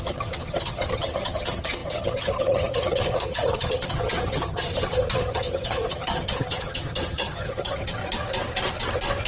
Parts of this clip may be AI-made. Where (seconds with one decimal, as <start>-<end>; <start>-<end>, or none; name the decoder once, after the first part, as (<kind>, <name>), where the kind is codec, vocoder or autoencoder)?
0.0-8.0 (vocoder, HiFi-GAN)